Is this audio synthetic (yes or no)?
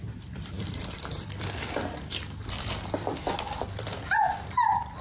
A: yes